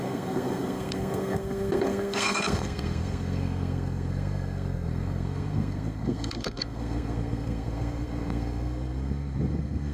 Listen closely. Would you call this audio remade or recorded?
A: remade